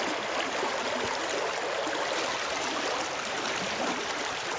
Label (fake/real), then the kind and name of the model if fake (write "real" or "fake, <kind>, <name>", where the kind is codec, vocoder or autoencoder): real